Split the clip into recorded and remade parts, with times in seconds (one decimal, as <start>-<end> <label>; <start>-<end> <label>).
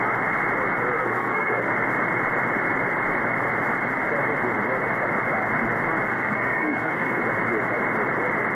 0.0-1.0 recorded; 1.0-1.7 remade; 1.7-6.1 recorded; 6.1-7.2 remade; 7.2-8.5 recorded